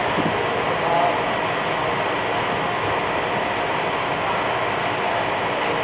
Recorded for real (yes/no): yes